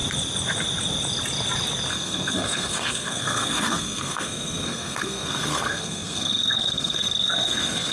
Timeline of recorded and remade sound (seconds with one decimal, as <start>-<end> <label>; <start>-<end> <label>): 0.0-1.9 recorded; 1.9-7.9 remade